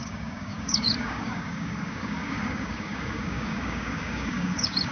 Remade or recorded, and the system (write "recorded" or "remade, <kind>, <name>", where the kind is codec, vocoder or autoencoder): remade, codec, DAC